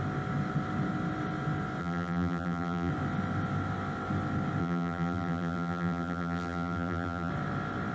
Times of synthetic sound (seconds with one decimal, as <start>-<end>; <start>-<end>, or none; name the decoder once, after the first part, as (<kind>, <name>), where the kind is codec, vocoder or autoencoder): 1.8-2.9 (vocoder, BigVGAN v2); 4.6-7.3